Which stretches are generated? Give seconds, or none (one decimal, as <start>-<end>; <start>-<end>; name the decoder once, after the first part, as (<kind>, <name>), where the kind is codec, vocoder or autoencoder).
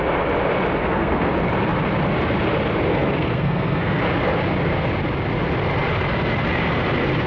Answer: 0.8-1.3 (codec, SNAC); 2.9-4.0